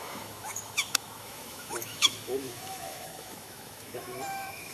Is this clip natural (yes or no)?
no